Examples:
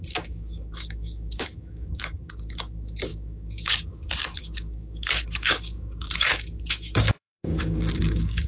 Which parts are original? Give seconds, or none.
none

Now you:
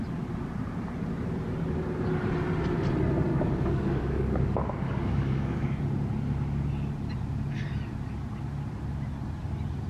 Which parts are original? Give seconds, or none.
0.0-3.3; 5.8-9.9

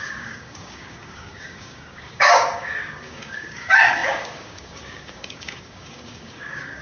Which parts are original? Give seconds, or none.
none

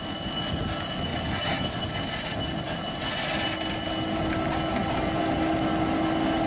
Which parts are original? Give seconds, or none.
0.0-6.5

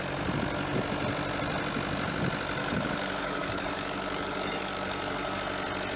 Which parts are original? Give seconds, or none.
0.0-2.6; 5.4-6.0

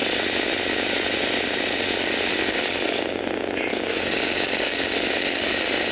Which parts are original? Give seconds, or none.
0.0-2.3; 3.2-3.7; 5.5-5.9